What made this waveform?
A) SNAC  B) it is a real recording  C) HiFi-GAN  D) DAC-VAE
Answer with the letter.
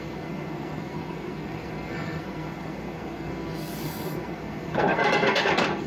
A